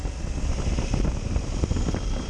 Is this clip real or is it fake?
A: real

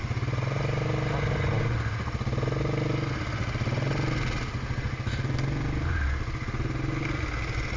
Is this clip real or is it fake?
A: real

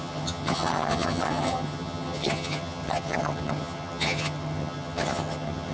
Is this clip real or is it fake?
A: fake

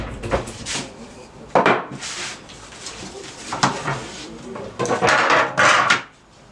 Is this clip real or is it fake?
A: fake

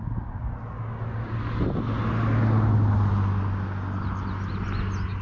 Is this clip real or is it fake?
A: real